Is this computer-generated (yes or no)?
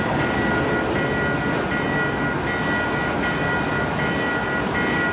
no